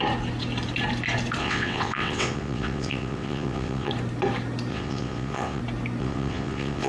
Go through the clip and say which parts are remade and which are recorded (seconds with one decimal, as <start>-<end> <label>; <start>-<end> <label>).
0.0-1.4 recorded; 1.4-3.9 remade; 3.9-4.7 recorded; 4.7-5.6 remade; 5.6-6.0 recorded; 6.0-6.9 remade